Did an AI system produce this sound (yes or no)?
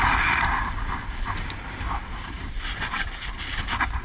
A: yes